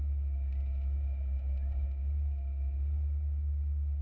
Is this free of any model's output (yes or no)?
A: yes